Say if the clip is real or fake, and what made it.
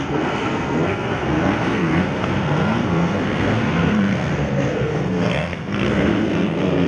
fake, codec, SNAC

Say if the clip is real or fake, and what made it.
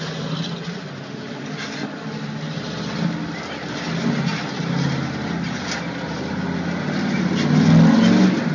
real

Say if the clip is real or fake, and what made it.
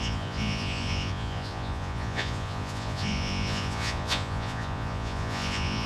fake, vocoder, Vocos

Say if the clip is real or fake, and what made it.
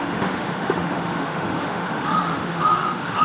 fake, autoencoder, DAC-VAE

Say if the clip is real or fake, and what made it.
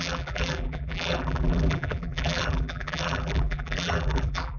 fake, vocoder, BigVGAN v2